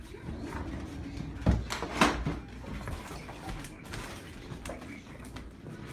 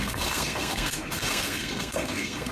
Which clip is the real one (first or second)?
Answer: first